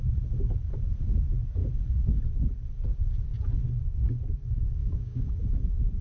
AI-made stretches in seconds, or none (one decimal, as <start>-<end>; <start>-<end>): 4.8-5.3